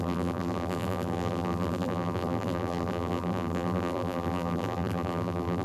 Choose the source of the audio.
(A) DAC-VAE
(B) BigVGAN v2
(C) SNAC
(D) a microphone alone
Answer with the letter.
B